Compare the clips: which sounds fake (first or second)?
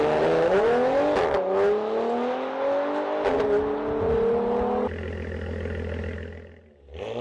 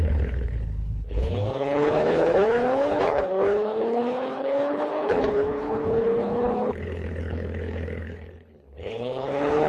second